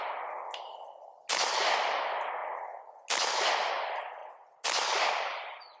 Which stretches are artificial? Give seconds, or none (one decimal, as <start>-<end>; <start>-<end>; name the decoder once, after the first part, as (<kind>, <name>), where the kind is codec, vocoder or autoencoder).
none